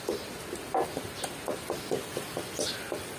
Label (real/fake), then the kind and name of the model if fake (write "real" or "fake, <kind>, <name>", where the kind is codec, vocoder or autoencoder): real